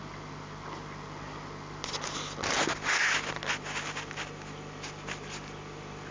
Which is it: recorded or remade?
recorded